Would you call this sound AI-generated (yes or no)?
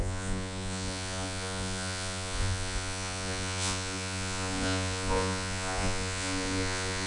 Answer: yes